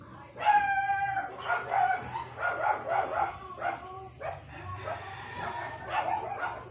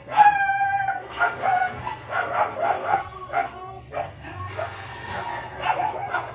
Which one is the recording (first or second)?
first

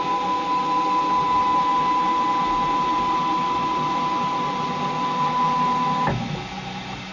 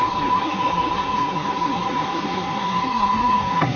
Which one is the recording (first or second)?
first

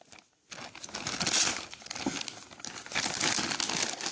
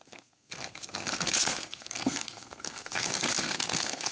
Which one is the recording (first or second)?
first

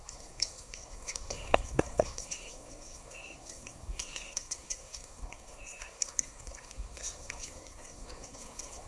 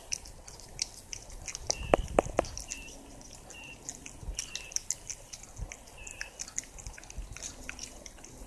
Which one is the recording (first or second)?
second